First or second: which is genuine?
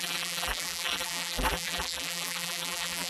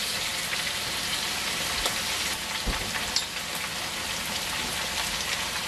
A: second